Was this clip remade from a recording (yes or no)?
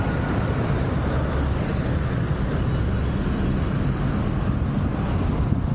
no